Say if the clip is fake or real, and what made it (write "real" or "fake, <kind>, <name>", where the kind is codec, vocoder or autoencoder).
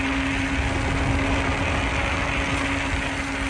real